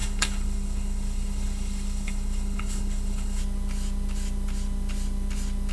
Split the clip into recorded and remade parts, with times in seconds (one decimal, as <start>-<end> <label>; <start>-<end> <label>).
0.0-3.4 remade; 3.4-5.7 recorded